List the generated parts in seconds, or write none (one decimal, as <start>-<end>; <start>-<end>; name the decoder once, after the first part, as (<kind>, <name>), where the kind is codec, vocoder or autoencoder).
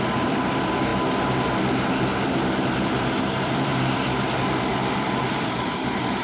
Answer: 0.0-0.9 (vocoder, BigVGAN v2); 2.0-6.2